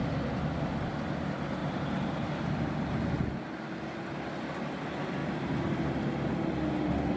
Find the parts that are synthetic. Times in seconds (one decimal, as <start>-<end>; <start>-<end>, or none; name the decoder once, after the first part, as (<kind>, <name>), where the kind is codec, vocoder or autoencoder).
0.0-0.6 (vocoder, BigVGAN v2); 1.6-2.3; 5.2-5.8